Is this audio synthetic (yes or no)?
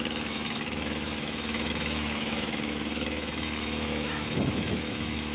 yes